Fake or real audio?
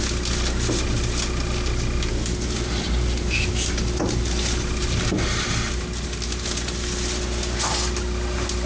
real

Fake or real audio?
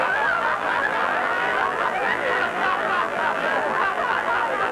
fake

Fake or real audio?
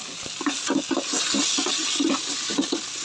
real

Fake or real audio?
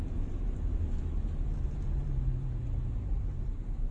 fake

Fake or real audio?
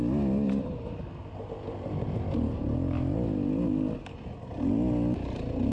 real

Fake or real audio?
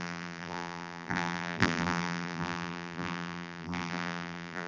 fake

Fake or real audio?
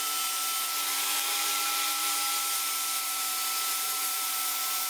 fake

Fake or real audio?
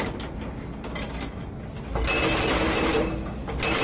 real